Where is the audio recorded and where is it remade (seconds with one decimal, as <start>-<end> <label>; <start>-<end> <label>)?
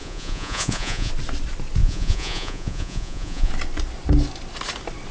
0.0-1.1 remade; 1.1-1.8 recorded; 1.8-3.5 remade; 3.5-5.1 recorded